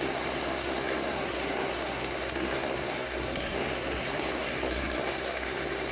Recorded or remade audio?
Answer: remade